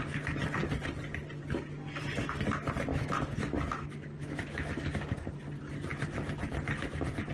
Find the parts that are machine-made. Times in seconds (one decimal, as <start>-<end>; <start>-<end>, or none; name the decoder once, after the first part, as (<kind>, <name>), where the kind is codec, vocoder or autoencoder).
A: 2.9-4.7 (autoencoder, DAC-VAE)